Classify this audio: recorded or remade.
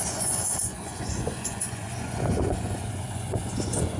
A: remade